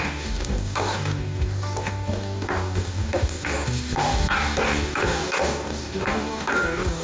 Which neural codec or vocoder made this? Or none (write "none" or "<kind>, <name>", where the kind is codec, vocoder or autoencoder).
codec, DAC